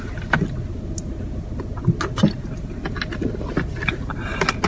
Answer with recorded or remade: recorded